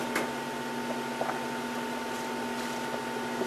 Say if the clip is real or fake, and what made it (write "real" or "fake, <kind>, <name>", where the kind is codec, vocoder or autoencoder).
real